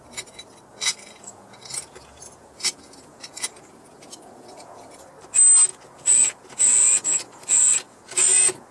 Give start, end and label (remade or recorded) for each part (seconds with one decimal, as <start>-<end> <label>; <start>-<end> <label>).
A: 0.0-0.7 recorded; 0.7-5.1 remade; 5.1-5.7 recorded; 5.7-8.7 remade